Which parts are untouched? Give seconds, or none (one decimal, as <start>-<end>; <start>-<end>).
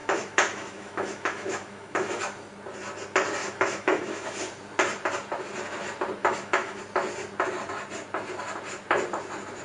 2.2-3.4; 4.4-6.2; 6.8-9.6